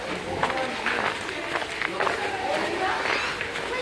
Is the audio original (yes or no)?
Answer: yes